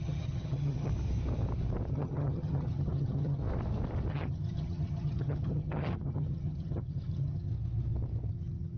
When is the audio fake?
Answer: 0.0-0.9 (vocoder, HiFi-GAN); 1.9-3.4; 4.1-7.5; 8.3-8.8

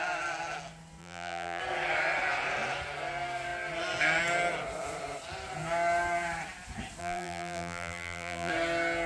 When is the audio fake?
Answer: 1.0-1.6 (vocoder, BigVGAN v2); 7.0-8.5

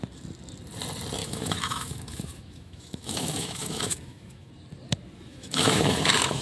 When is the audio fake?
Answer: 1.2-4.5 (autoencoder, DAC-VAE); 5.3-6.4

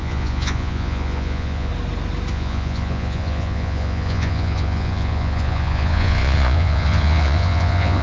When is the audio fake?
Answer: 0.0-1.7 (vocoder, Vocos); 2.3-8.0